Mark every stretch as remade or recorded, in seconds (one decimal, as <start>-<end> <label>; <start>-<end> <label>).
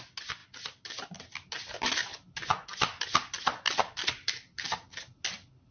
0.0-5.7 recorded